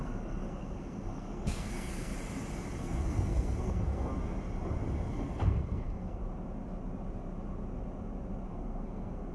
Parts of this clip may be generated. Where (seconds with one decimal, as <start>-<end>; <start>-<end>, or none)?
0.0-2.1; 2.8-4.1; 5.1-6.2; 8.5-9.3

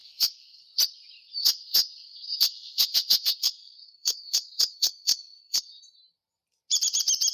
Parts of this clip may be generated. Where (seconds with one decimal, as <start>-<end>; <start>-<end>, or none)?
0.0-0.6; 1.4-5.6